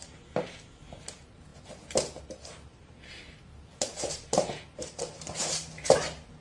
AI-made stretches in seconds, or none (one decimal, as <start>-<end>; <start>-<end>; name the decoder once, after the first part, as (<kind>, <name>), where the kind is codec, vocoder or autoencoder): 0.0-1.5 (vocoder, BigVGAN v2); 2.2-6.4